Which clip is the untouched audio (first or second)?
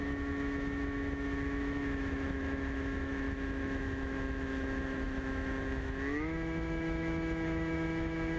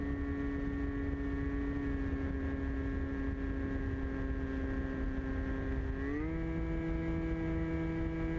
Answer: second